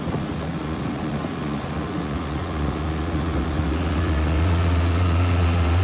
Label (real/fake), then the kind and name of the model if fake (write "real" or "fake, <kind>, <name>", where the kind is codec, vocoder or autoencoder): fake, vocoder, Vocos